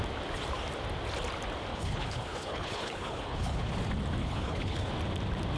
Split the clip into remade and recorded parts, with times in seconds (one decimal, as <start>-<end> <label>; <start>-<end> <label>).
0.0-1.7 recorded; 1.7-3.7 remade; 3.7-4.2 recorded; 4.2-4.9 remade; 4.9-5.6 recorded